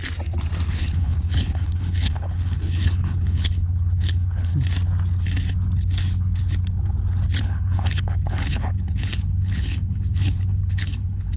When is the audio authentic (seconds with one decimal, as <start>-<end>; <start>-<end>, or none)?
0.0-0.7; 4.5-7.4